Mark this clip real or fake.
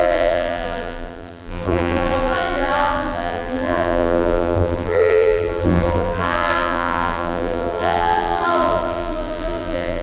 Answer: fake